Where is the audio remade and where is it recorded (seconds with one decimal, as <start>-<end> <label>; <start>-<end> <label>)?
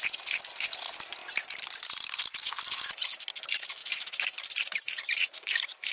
0.0-1.2 recorded; 1.2-2.2 remade; 2.2-3.8 recorded; 3.8-5.9 remade